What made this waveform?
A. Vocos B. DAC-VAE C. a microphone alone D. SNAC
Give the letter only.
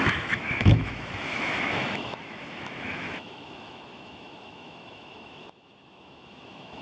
B